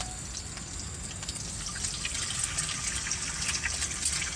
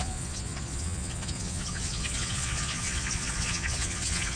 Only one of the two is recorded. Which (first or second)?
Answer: first